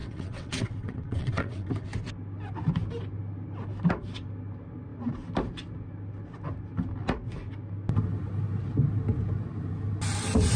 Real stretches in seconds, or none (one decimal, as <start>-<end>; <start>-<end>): 1.7-10.6